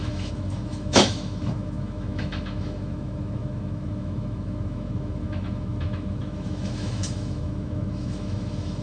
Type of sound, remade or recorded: remade